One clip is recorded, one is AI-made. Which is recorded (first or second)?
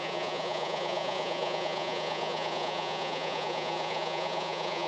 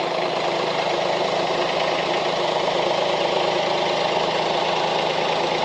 second